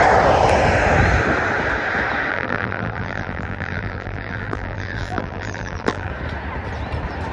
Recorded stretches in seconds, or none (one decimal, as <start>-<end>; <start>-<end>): 0.0-2.3; 6.1-7.3